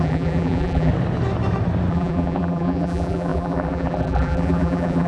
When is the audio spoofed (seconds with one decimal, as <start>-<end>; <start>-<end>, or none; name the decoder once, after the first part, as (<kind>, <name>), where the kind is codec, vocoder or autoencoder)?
0.0-0.9 (vocoder, BigVGAN v2); 1.9-5.1